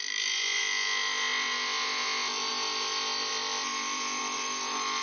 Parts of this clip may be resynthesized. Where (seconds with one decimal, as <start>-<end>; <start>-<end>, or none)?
0.0-0.6; 2.5-5.0

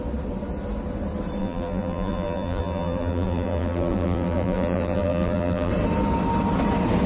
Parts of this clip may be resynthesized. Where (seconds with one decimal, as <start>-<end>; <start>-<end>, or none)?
1.4-5.7

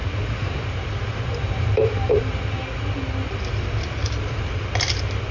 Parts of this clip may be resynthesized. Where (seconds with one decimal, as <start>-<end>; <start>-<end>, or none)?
0.0-2.4; 4.0-4.7